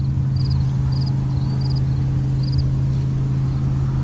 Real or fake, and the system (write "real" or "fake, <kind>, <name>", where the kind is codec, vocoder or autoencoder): real